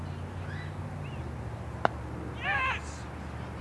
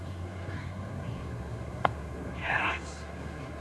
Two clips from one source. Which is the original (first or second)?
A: first